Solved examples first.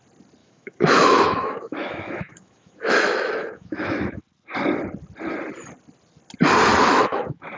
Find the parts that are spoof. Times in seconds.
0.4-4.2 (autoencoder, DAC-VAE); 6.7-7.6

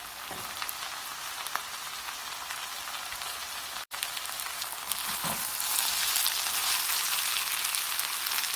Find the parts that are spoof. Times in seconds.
1.1-4.1 (vocoder, BigVGAN v2); 5.2-5.9